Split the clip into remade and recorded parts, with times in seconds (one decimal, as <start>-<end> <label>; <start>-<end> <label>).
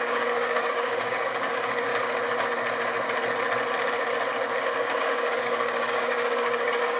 0.0-1.9 remade; 1.9-4.6 recorded; 4.6-7.0 remade